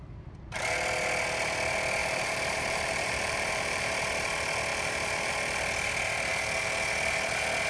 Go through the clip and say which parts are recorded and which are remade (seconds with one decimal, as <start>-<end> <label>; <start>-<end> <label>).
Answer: 0.0-2.0 recorded; 2.0-3.9 remade; 3.9-4.7 recorded; 4.7-5.3 remade; 5.3-7.7 recorded